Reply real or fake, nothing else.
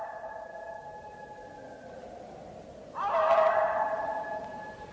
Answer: real